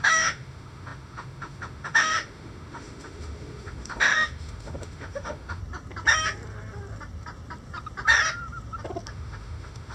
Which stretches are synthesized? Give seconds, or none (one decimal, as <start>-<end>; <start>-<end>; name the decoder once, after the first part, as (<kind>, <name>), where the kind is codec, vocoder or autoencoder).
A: 0.0-5.6 (autoencoder, DAC-VAE); 9.1-9.9